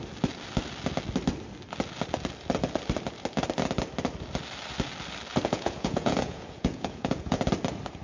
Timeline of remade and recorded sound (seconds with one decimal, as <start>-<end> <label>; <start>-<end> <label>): 0.0-5.3 recorded; 5.3-7.4 remade; 7.4-8.0 recorded